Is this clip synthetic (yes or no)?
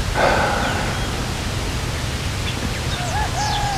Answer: no